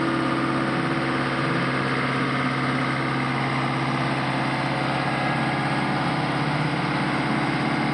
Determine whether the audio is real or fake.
real